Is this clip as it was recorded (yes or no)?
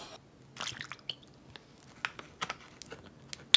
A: yes